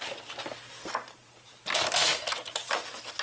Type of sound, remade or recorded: recorded